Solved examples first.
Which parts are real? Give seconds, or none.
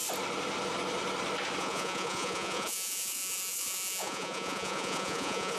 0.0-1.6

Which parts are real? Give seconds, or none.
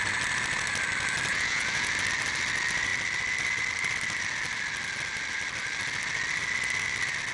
0.0-1.3; 1.9-7.3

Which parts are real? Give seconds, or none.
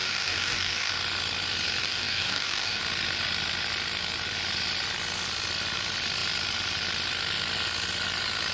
0.9-1.8; 2.8-8.5